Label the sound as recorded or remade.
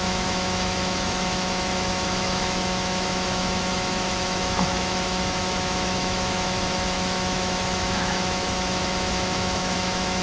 remade